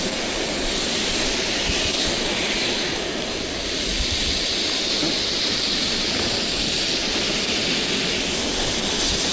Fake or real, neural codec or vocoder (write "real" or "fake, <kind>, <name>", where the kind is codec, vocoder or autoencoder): real